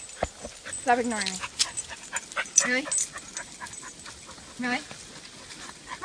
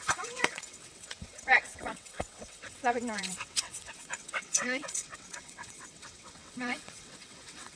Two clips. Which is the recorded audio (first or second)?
first